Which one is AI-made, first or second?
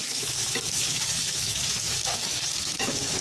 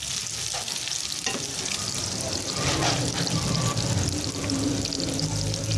first